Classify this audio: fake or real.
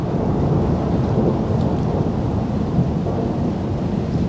real